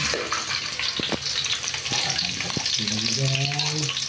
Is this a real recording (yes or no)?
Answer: yes